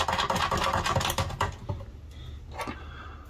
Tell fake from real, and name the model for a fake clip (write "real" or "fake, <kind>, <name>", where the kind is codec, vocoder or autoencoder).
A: real